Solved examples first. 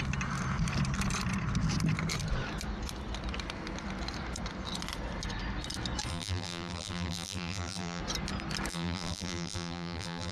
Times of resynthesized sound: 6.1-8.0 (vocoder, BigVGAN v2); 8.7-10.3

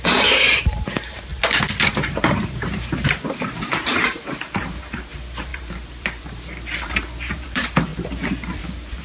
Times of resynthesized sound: 0.0-1.3 (vocoder, BigVGAN v2); 1.9-7.9; 8.6-9.0

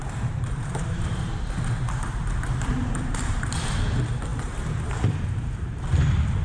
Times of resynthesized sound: 0.0-3.8 (vocoder, BigVGAN v2); 4.3-5.8

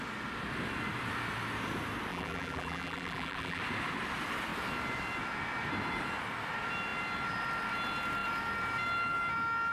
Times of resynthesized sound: 2.1-3.6 (vocoder, BigVGAN v2)

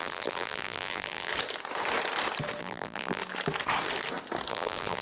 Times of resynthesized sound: 0.0-1.3 (vocoder, BigVGAN v2); 2.6-3.2; 4.5-5.0

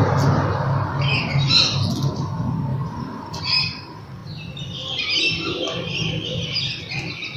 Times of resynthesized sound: 2.7-3.6 (vocoder, BigVGAN v2)

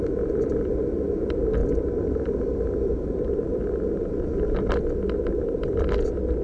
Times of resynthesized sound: 1.6-4.1 (vocoder, BigVGAN v2)